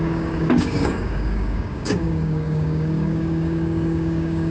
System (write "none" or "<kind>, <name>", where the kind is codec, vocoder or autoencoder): codec, DAC